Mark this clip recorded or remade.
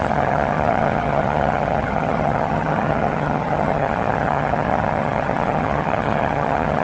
remade